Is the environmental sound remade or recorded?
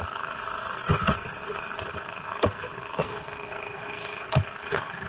remade